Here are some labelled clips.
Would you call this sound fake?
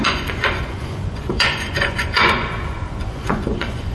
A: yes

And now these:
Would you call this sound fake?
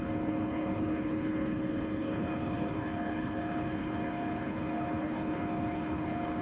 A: yes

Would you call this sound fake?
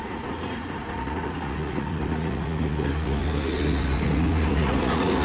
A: yes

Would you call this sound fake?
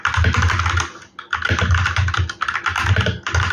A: no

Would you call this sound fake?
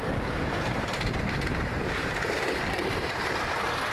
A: yes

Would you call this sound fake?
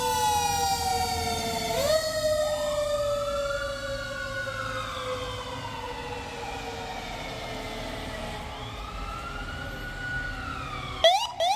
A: no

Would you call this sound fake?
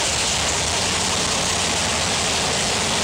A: no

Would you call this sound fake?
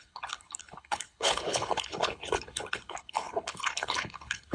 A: yes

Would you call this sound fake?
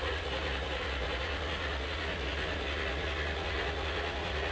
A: yes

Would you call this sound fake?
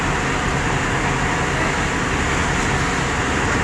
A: no